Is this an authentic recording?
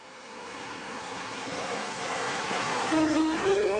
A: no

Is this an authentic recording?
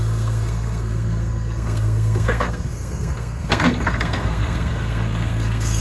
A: no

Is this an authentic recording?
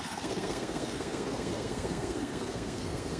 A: no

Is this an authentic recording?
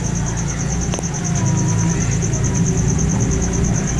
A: yes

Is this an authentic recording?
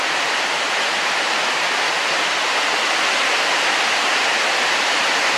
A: yes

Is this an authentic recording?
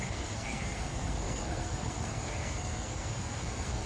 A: no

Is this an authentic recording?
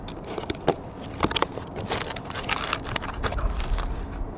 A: yes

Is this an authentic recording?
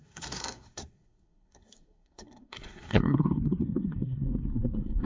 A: no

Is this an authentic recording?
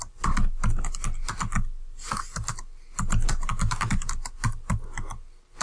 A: yes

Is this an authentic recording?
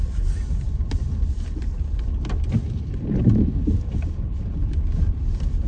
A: yes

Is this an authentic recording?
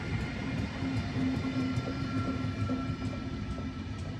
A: yes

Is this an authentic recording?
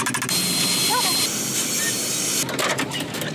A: yes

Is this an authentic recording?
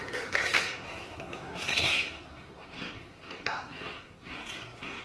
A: no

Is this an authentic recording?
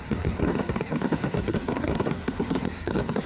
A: no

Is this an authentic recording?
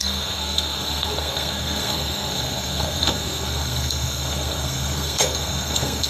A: no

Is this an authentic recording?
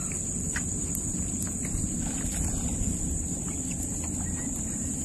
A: yes